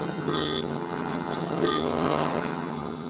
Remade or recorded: remade